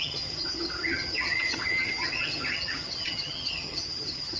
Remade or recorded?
remade